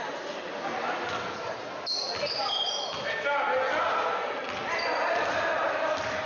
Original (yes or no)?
yes